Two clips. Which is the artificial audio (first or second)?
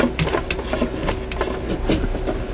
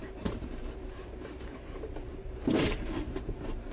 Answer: second